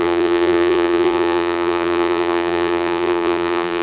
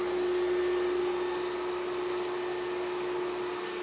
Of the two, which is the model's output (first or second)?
first